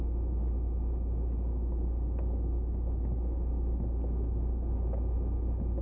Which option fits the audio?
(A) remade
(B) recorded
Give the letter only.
B